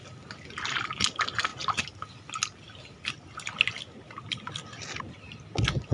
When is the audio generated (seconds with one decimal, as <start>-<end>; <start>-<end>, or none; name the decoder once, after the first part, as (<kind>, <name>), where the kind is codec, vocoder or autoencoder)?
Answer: none